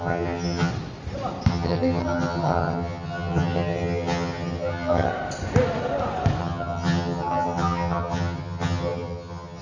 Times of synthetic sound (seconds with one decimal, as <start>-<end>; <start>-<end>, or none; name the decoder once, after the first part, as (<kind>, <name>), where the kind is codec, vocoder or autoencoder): 0.0-0.7 (vocoder, HiFi-GAN); 1.5-5.1; 6.4-9.6